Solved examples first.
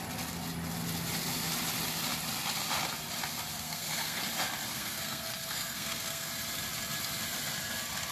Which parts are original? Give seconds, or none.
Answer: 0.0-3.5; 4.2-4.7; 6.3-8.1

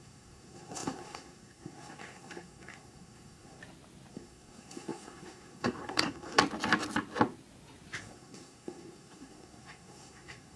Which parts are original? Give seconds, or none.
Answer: 3.6-4.1; 6.4-8.0

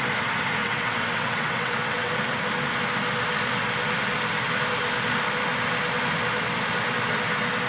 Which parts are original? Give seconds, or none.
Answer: 0.0-0.6; 2.1-7.7

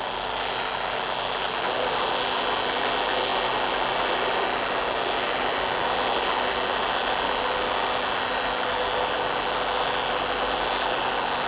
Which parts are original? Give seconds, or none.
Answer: 0.0-11.5